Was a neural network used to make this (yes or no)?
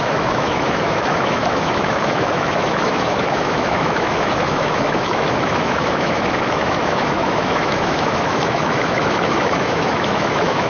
yes